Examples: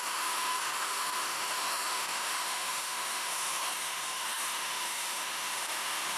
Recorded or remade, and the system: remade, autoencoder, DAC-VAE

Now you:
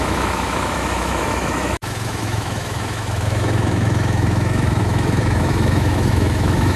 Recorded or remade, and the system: remade, autoencoder, DAC-VAE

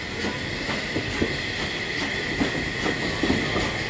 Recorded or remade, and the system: recorded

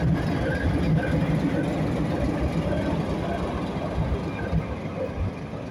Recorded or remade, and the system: recorded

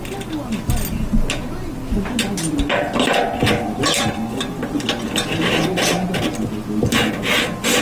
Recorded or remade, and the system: recorded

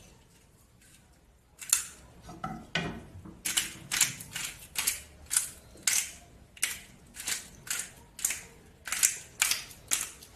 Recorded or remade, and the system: recorded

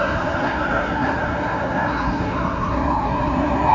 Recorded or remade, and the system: remade, codec, SNAC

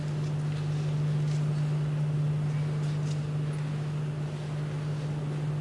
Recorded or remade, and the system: recorded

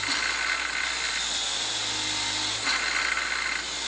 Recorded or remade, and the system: recorded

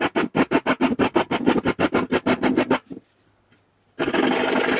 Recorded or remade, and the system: recorded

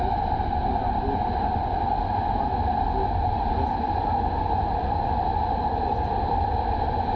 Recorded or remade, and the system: recorded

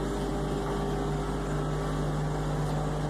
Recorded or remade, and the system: recorded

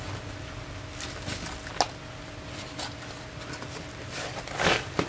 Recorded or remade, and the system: recorded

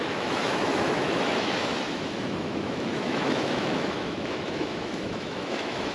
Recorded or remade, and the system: remade, autoencoder, DAC-VAE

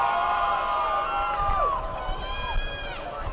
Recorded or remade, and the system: recorded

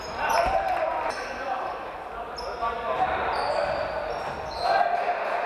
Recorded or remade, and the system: remade, vocoder, BigVGAN v2